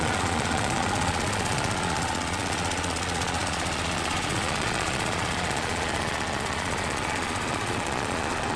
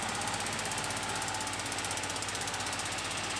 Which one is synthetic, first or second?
first